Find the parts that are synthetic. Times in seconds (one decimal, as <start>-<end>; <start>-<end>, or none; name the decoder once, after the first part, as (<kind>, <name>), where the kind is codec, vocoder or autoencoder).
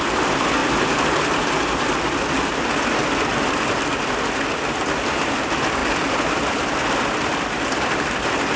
5.8-7.8 (vocoder, BigVGAN v2)